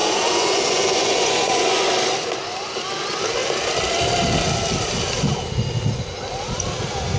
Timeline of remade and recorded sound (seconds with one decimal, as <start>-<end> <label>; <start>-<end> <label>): 0.0-1.9 remade; 1.9-7.2 recorded